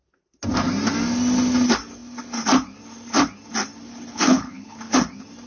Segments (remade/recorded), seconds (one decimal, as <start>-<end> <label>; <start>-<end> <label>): 0.0-4.1 recorded; 4.1-4.8 remade; 4.8-5.5 recorded